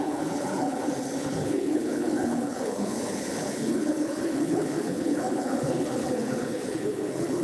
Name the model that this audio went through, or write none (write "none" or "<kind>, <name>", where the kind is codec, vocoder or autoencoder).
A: codec, HILCodec